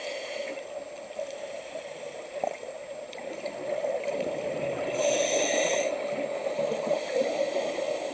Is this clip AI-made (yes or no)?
no